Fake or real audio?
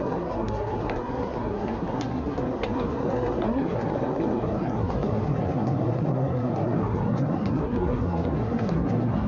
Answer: fake